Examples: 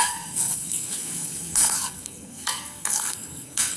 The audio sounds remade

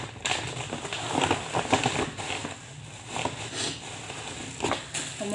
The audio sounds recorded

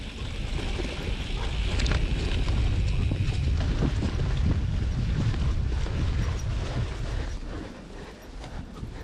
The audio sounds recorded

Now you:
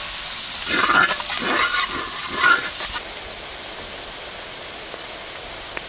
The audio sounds recorded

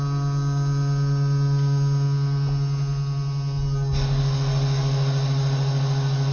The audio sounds recorded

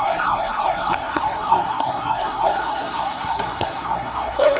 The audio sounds remade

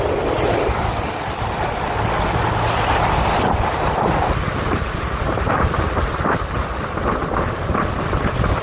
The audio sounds recorded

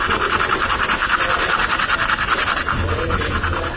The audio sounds recorded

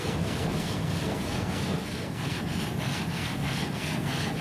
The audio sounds remade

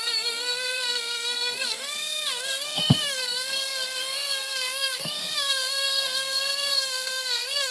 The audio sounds remade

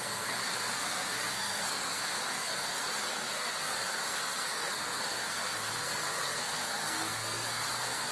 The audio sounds remade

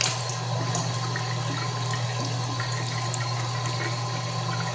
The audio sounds recorded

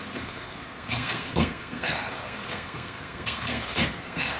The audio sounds remade